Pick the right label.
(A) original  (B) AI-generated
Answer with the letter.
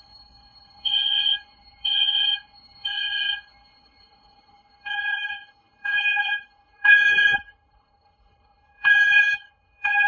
B